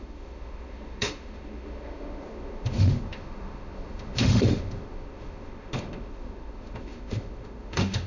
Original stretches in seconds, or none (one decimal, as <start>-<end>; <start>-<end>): none